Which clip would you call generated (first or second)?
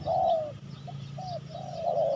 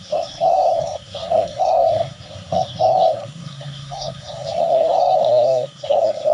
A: second